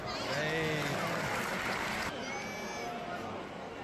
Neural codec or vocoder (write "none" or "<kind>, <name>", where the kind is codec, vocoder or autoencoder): none